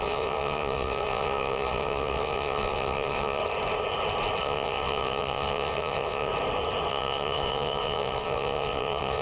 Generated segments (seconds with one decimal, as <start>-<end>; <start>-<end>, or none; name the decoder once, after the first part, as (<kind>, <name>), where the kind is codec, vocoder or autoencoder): 0.0-3.4 (vocoder, WaveNeXt); 4.4-6.3; 6.9-9.2